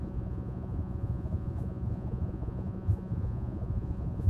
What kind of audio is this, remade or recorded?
remade